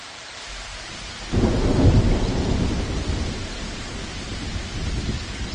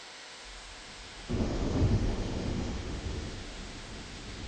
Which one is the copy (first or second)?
second